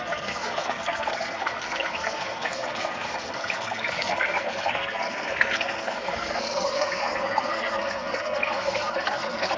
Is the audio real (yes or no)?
no